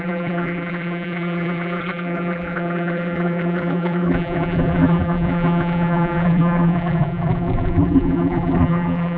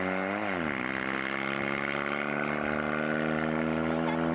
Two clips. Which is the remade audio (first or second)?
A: first